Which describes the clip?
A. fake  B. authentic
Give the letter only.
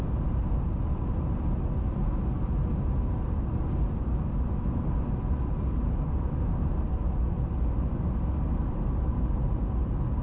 B